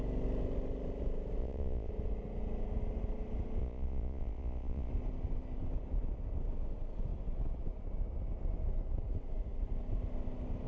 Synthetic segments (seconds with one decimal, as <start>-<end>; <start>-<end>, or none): 1.4-1.9; 3.6-4.9